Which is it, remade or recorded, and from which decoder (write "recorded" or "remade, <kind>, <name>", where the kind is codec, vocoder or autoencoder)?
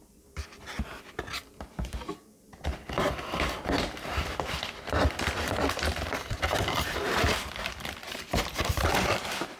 remade, vocoder, BigVGAN v2